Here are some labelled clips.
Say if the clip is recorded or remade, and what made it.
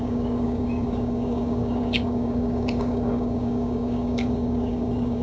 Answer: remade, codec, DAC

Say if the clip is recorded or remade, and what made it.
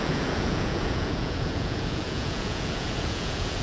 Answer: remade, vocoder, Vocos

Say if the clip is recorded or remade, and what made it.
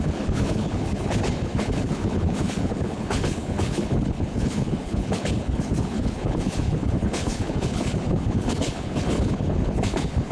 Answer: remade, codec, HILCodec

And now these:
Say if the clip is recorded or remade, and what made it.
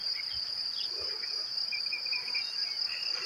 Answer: recorded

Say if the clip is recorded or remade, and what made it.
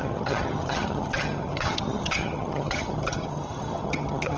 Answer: remade, vocoder, HiFi-GAN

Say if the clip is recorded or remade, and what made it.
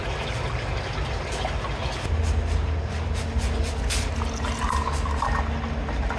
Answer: recorded